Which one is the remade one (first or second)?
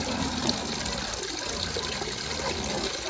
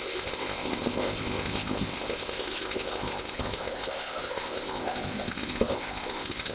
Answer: second